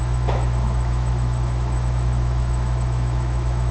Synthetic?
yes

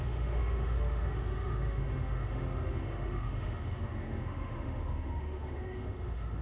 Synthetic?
yes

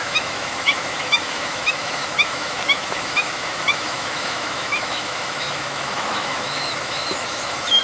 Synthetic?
yes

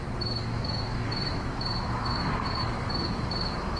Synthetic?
yes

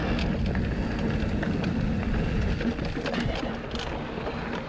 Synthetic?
no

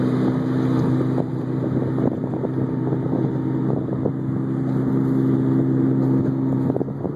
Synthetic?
no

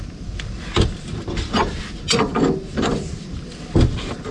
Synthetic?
no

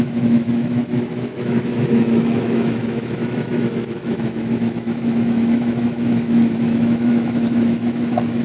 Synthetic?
yes